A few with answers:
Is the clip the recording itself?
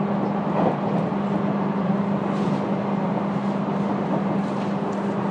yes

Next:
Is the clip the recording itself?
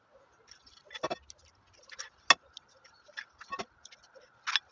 yes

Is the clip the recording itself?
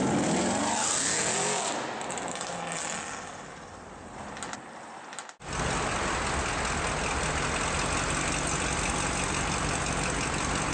yes